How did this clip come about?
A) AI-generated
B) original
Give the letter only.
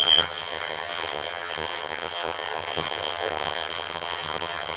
A